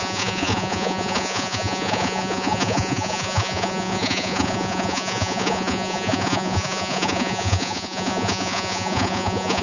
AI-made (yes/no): yes